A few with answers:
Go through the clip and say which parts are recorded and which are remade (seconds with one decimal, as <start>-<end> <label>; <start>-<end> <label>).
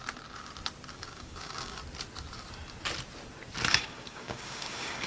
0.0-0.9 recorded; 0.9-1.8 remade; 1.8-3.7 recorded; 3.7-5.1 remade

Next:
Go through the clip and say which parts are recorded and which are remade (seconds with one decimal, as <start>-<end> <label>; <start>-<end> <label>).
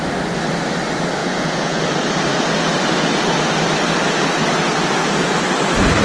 0.0-1.2 recorded; 1.2-1.8 remade; 1.8-6.0 recorded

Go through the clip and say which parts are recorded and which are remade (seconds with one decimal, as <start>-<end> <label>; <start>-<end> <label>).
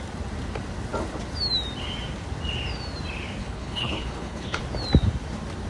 0.0-3.4 recorded; 3.4-4.6 remade; 4.6-5.7 recorded